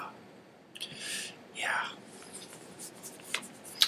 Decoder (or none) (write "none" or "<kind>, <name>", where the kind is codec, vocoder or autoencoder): none